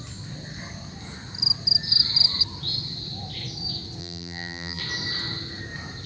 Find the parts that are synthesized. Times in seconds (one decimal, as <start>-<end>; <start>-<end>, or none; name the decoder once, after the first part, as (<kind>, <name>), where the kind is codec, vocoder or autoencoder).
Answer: 4.0-4.8 (vocoder, BigVGAN v2)